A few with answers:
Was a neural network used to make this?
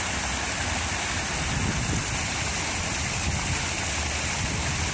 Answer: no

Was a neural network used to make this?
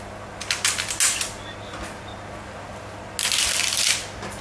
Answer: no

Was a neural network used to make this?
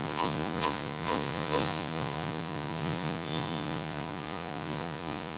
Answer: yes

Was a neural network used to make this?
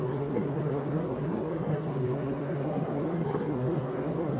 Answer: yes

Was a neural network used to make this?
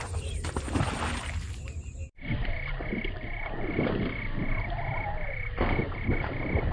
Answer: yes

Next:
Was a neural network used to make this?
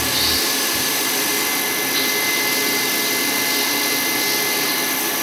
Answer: no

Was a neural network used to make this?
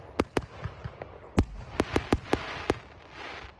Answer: no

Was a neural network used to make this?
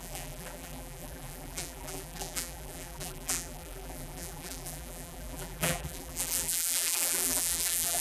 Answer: yes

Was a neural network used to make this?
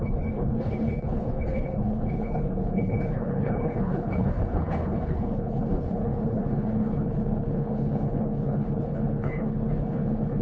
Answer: yes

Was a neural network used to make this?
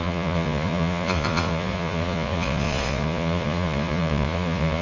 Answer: yes